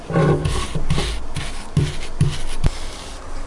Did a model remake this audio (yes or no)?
no